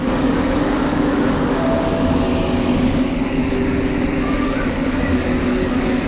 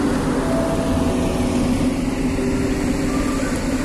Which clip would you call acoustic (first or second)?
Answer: second